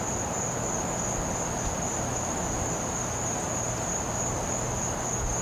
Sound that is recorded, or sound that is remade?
recorded